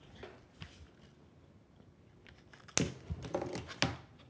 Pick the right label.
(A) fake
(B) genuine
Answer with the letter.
B